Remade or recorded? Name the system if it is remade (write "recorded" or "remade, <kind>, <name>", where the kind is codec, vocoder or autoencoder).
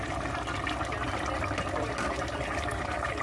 recorded